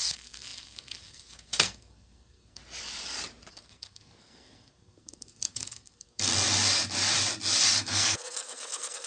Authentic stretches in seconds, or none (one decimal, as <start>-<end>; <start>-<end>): 2.6-3.5; 6.3-7.8